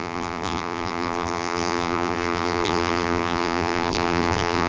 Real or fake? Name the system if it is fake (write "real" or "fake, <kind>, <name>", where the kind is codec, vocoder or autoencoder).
fake, vocoder, BigVGAN v2